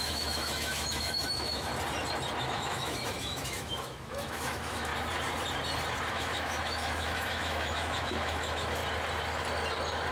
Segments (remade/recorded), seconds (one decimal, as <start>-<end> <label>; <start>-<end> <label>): 0.0-1.7 remade; 1.7-2.4 recorded; 2.4-4.9 remade; 4.9-6.1 recorded; 6.1-8.8 remade; 8.8-10.1 recorded